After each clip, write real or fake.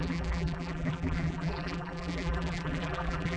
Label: fake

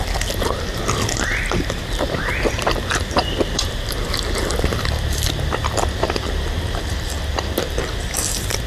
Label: fake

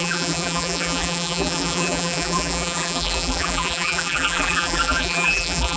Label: fake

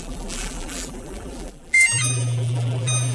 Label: fake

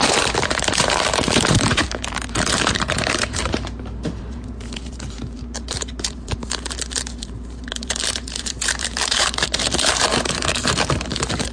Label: fake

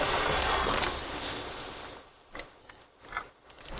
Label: real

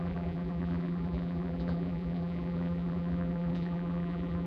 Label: fake